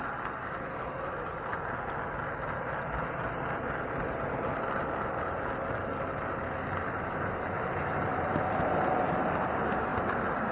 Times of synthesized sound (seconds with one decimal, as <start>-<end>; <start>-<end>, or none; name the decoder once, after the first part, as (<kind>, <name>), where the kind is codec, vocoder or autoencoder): none